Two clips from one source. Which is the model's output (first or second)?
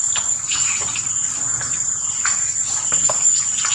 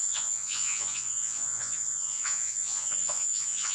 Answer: second